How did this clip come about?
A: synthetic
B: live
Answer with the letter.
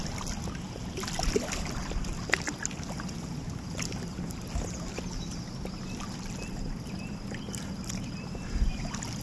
B